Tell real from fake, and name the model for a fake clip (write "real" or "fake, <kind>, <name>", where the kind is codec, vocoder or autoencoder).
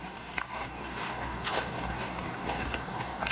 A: fake, codec, DAC